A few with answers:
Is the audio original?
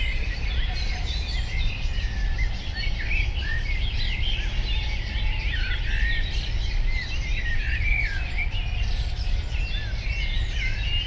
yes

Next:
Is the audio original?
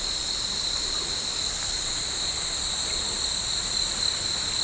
yes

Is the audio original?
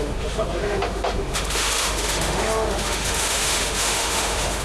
no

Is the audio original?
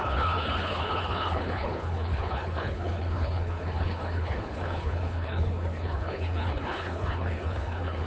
no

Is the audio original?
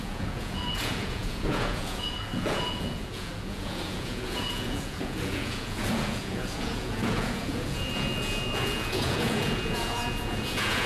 no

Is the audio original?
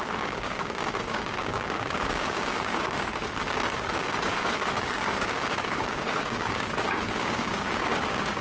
no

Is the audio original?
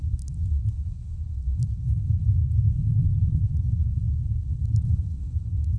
no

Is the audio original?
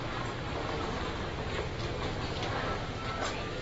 yes